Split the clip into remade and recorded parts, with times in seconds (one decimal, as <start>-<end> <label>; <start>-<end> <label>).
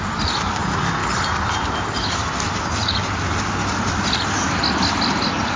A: 0.0-5.6 recorded